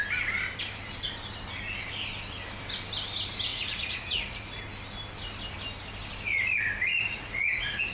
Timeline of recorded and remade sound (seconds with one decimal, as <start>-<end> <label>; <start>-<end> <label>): 0.0-3.5 recorded; 3.5-4.6 remade; 4.6-6.9 recorded; 6.9-7.9 remade